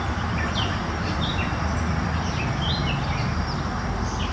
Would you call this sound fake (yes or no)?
no